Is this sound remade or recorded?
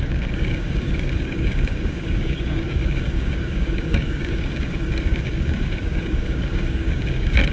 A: remade